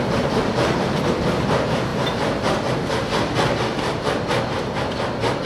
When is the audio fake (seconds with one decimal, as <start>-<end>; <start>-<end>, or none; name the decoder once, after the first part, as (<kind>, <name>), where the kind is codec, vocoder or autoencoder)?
0.0-1.9 (vocoder, BigVGAN v2)